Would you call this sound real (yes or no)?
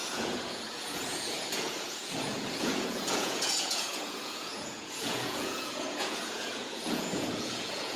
no